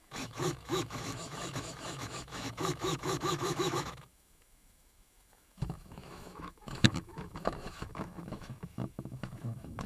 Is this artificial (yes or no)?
yes